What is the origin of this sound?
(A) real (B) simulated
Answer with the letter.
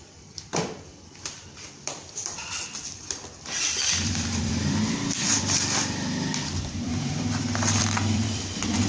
B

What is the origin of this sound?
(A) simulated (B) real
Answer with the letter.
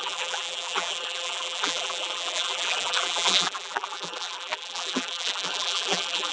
A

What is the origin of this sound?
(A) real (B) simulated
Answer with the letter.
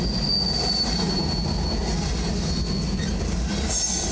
A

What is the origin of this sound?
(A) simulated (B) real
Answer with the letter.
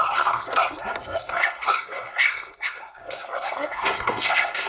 A